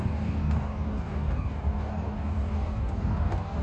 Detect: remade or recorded remade